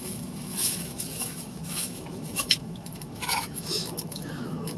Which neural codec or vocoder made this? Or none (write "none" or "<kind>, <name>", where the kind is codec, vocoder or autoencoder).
autoencoder, DAC-VAE